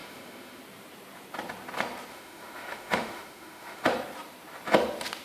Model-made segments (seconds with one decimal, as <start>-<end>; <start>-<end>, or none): 0.0-0.6; 2.1-3.9